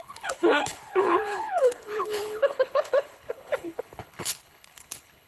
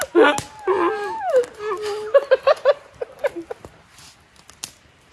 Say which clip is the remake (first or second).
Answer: first